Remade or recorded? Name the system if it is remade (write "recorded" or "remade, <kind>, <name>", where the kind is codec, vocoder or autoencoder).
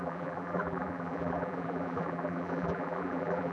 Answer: remade, vocoder, BigVGAN v2